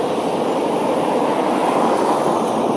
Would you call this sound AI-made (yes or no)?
no